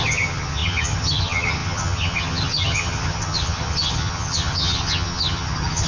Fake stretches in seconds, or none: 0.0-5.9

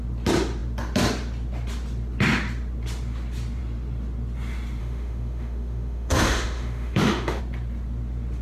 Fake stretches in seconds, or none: 4.8-7.4

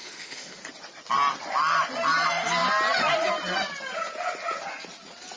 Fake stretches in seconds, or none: 0.0-0.6